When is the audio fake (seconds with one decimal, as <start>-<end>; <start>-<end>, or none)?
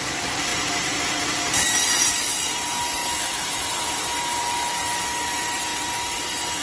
3.0-4.4